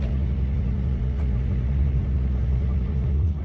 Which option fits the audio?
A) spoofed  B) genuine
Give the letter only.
A